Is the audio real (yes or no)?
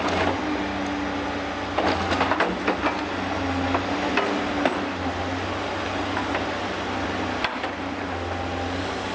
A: yes